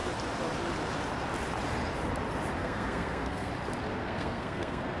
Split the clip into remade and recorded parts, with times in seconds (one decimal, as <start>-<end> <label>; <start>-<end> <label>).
0.0-2.6 recorded; 2.6-3.5 remade; 3.5-3.9 recorded; 3.9-5.0 remade